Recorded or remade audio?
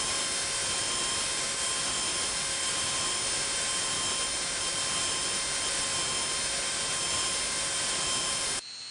recorded